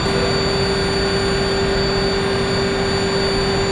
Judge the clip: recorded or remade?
recorded